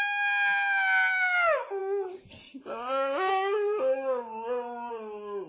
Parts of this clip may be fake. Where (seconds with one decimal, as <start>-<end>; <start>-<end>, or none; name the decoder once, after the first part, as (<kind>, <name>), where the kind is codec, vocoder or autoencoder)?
none